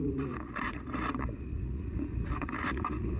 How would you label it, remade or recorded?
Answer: remade